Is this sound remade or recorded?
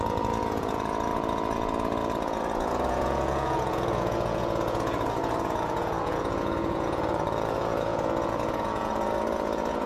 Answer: remade